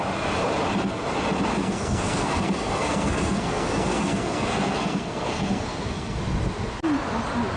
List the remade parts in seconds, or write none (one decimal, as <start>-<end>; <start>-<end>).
1.6-6.2